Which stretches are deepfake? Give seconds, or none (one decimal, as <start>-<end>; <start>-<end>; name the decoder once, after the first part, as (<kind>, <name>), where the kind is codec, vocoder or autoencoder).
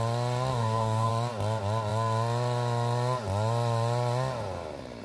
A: 0.5-1.1 (codec, DAC)